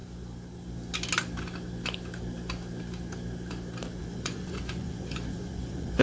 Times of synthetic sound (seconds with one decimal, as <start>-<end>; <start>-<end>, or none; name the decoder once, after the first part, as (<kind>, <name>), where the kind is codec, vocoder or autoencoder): 4.0-6.0 (vocoder, Vocos)